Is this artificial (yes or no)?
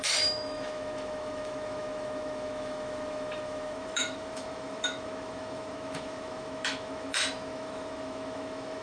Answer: yes